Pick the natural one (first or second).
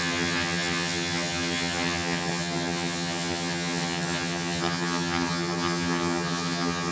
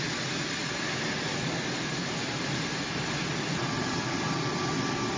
second